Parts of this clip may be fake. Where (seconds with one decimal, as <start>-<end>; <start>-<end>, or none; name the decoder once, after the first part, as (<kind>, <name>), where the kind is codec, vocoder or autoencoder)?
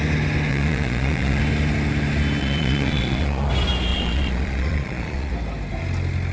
0.5-1.4 (vocoder, Vocos); 2.4-3.5; 3.9-5.3